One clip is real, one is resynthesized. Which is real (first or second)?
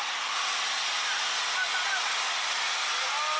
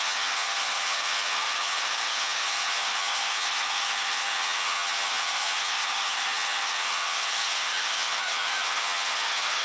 first